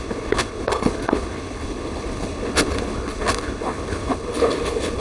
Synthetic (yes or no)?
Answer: yes